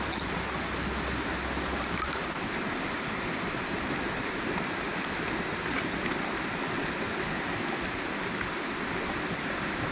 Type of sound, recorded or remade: recorded